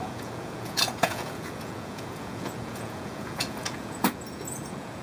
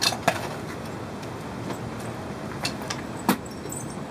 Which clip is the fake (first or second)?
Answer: first